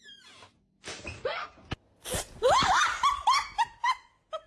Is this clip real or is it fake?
real